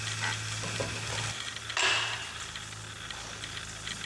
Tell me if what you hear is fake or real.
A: real